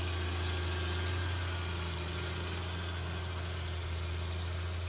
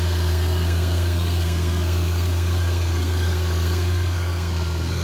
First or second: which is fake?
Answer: second